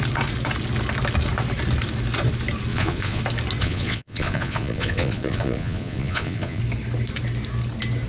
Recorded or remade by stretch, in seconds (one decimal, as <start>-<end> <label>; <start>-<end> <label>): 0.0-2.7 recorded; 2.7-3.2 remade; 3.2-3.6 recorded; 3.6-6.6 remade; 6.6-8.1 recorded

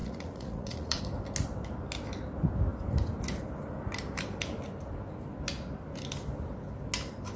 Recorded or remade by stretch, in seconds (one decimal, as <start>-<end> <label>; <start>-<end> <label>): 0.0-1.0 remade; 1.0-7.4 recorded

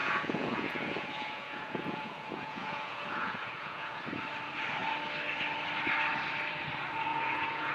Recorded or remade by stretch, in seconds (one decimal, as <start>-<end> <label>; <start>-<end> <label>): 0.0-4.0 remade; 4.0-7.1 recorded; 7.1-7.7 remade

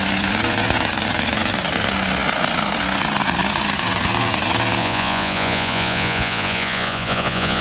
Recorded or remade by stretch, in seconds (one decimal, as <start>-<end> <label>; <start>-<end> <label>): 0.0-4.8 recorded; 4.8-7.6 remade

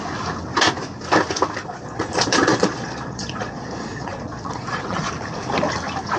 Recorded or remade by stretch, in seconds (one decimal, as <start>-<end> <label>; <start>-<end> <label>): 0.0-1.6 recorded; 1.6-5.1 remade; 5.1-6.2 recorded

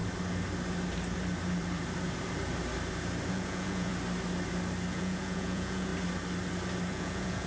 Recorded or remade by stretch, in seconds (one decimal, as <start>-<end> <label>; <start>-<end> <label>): 0.0-3.3 recorded; 3.3-3.9 remade; 3.9-4.9 recorded; 4.9-5.9 remade; 5.9-6.9 recorded; 6.9-7.5 remade

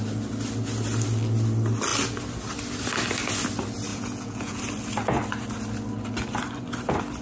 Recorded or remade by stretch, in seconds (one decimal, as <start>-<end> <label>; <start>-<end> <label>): 0.0-3.9 recorded; 3.9-4.6 remade; 4.6-7.2 recorded

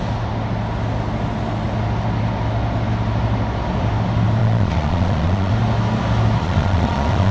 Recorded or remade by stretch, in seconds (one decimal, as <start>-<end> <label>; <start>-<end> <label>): 0.0-4.4 recorded; 4.4-5.5 remade; 5.5-6.4 recorded; 6.4-7.3 remade